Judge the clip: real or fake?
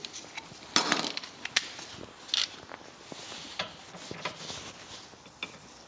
real